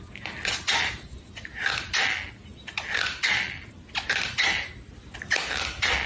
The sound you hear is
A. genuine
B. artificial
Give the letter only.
A